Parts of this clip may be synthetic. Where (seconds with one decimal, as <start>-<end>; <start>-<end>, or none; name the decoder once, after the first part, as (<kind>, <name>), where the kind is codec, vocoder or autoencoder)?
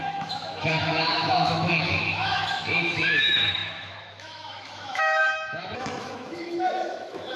0.0-7.4 (autoencoder, DAC-VAE)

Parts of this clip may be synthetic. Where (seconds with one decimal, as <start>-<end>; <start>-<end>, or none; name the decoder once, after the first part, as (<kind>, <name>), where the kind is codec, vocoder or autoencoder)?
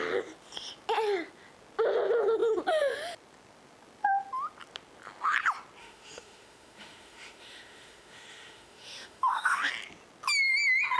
5.8-9.7 (autoencoder, DAC-VAE)